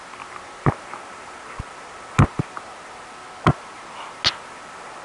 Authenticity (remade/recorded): recorded